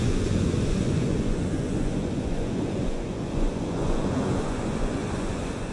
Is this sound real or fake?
fake